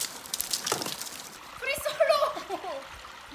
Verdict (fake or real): real